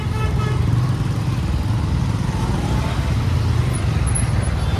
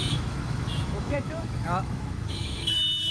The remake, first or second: second